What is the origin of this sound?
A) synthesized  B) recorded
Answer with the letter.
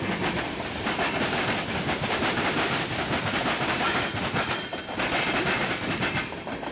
A